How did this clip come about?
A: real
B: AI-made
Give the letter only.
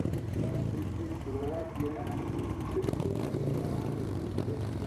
B